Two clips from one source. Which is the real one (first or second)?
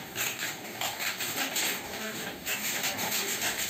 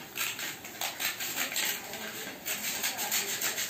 second